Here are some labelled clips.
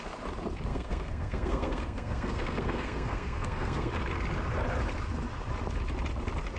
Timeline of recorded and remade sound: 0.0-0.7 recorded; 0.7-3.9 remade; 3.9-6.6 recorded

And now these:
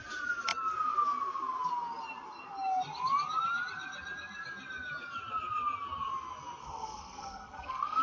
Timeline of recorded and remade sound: 0.0-6.6 recorded; 6.6-8.0 remade

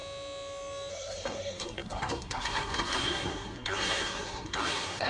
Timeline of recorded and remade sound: 0.0-0.9 recorded; 0.9-5.1 remade

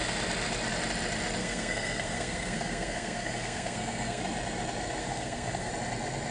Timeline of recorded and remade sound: 0.0-1.4 recorded; 1.4-4.2 remade; 4.2-5.0 recorded; 5.0-5.7 remade; 5.7-6.3 recorded

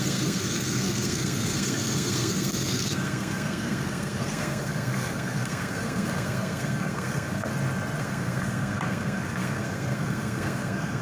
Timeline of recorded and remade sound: 0.0-7.5 remade; 7.5-8.0 recorded; 8.0-11.0 remade